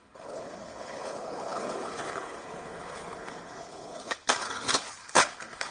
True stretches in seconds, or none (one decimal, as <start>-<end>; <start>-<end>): none